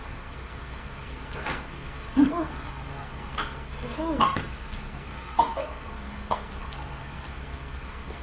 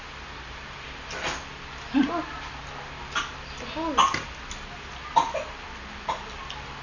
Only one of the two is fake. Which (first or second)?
first